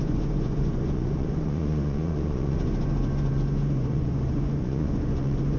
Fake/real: fake